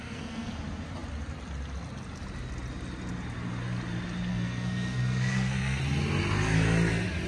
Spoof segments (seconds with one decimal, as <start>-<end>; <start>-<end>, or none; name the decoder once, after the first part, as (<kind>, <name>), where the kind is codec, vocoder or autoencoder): 0.0-0.5 (codec, SNAC); 4.3-5.8